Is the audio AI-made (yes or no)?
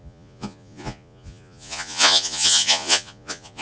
yes